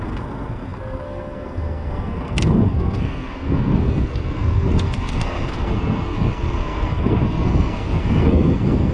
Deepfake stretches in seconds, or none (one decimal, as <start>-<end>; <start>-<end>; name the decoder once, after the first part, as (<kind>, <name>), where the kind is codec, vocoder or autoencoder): 0.0-8.9 (codec, SNAC)